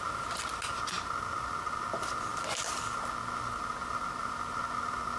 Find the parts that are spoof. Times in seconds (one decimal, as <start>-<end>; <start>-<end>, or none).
none

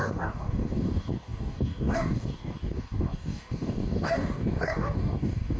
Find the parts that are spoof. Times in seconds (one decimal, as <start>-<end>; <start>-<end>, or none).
0.0-5.6

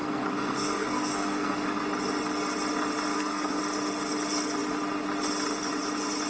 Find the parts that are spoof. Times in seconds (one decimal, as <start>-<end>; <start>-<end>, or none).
0.0-1.8; 3.1-3.6

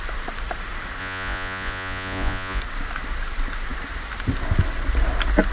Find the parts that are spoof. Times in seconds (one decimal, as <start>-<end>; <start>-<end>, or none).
1.0-2.6

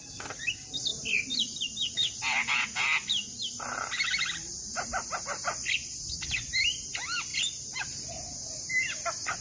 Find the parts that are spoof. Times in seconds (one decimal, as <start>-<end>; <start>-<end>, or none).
0.9-2.4

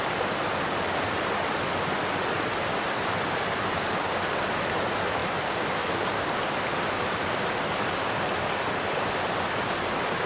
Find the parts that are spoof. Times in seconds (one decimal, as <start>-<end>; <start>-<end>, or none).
none

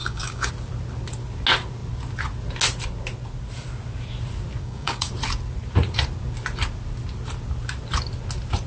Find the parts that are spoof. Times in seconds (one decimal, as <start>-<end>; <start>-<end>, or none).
0.0-0.5; 4.6-5.1